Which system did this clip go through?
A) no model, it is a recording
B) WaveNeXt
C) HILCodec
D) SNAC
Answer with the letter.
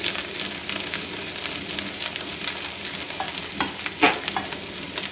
A